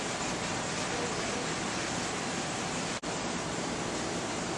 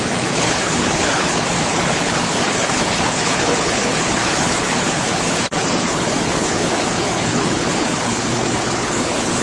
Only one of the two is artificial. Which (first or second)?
second